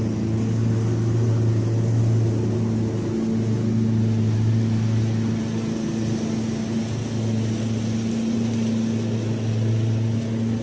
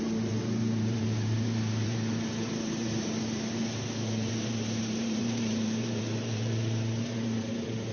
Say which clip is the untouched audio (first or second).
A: first